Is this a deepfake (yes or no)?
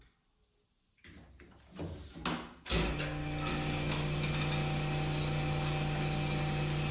no